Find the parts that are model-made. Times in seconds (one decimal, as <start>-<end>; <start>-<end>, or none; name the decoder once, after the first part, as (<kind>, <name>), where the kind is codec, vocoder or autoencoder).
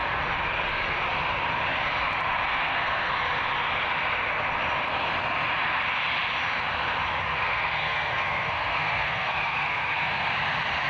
2.5-3.1 (codec, SNAC); 7.3-10.3